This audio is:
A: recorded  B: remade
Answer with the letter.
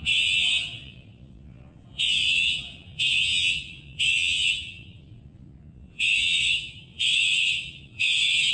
B